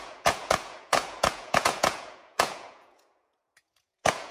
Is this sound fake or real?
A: fake